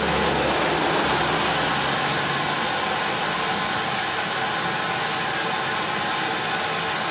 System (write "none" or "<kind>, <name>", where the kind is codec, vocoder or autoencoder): none